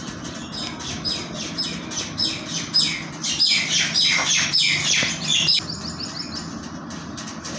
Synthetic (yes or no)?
no